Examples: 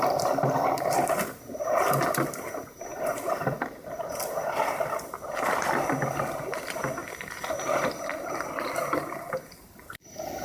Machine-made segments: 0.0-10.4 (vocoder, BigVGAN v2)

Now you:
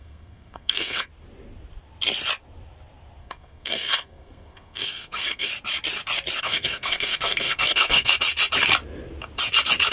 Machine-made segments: 0.0-1.1 (codec, SNAC); 3.2-5.5; 6.4-8.1

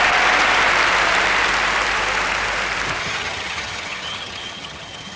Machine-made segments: 3.0-5.2 (vocoder, HiFi-GAN)

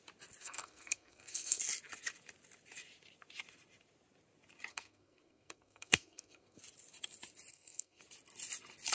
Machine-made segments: 0.4-1.6 (codec, SNAC); 4.7-6.6; 7.5-8.0

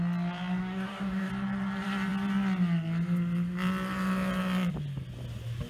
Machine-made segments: 0.6-1.3 (codec, DAC)

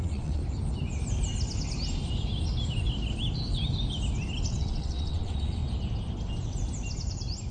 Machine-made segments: 0.0-0.4 (vocoder, WaveNeXt); 4.5-5.6

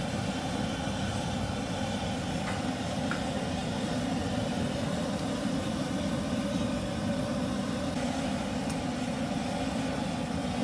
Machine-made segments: 0.0-10.6 (vocoder, BigVGAN v2)